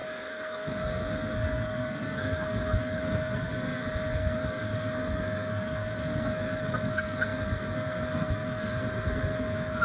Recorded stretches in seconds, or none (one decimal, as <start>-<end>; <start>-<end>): none